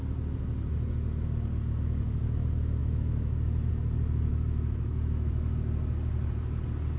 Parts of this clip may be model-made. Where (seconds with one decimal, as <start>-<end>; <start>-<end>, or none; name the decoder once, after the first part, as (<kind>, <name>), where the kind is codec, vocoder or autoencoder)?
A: 2.8-3.7 (autoencoder, DAC-VAE); 4.3-5.5

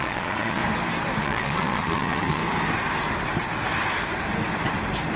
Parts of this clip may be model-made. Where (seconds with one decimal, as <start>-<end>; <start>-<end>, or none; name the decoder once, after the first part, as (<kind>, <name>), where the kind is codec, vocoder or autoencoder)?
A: 0.0-0.6 (vocoder, Vocos); 1.2-2.4

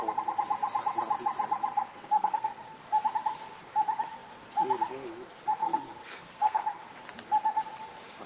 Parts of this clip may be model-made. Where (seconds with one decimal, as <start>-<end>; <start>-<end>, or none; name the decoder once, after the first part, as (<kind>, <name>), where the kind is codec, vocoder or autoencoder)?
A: 1.9-2.8 (codec, SNAC); 5.6-6.9

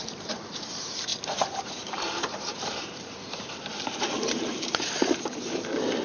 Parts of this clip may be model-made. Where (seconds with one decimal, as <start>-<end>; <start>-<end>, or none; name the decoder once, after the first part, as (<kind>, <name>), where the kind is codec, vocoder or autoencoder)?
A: 0.0-6.0 (vocoder, BigVGAN v2)

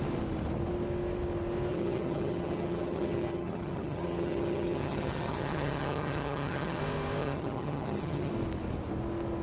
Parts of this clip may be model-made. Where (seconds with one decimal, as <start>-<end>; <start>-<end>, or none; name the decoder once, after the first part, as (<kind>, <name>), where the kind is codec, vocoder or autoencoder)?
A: 1.7-6.8 (vocoder, HiFi-GAN); 7.2-8.3

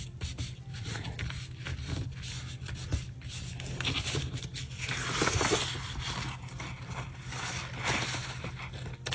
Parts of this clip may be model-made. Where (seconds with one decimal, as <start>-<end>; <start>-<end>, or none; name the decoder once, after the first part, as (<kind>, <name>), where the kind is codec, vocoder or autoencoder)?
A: 0.7-1.2 (vocoder, Vocos)

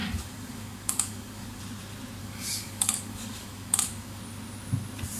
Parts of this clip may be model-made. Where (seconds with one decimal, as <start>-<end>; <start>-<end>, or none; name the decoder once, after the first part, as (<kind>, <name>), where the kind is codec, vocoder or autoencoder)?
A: 0.0-1.6 (codec, DAC); 2.2-4.2